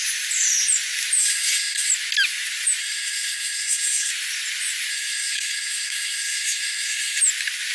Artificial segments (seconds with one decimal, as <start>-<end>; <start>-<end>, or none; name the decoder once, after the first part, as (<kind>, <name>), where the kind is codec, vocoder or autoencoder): 1.2-1.9 (codec, SNAC); 2.8-4.1; 4.9-7.2